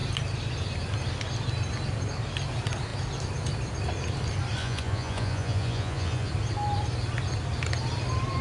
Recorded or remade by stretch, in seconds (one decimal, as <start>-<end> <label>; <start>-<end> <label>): 0.0-4.6 recorded; 4.6-6.3 remade; 6.3-8.4 recorded